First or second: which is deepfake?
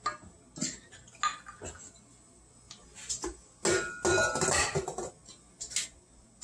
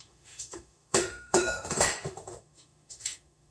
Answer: second